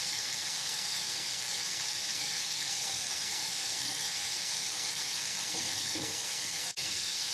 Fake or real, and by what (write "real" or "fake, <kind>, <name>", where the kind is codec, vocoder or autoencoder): fake, codec, SNAC